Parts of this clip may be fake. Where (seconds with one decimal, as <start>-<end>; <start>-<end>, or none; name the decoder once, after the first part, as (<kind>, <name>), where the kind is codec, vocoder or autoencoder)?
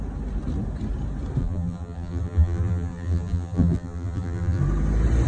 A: 1.4-4.6 (vocoder, BigVGAN v2)